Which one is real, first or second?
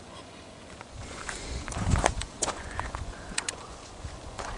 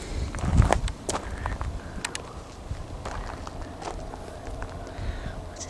second